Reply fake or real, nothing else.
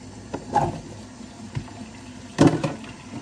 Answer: real